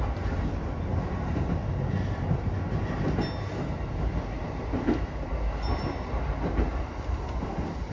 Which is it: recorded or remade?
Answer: recorded